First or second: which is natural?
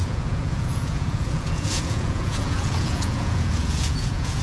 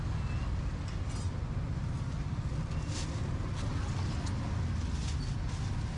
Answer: second